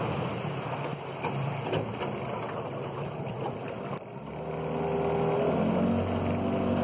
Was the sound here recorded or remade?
recorded